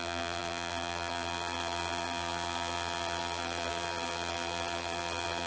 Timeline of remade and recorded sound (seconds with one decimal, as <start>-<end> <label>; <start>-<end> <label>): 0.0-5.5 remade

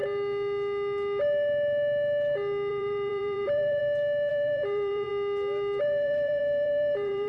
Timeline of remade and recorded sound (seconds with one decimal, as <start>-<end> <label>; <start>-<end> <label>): 0.0-2.7 recorded; 2.7-3.8 remade; 3.8-4.3 recorded; 4.3-5.1 remade; 5.1-5.8 recorded; 5.8-7.3 remade

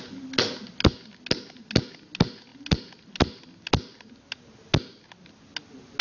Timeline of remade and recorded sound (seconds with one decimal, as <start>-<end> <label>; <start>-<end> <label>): 0.0-6.0 recorded